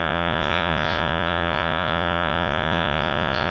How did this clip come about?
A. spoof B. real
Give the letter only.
A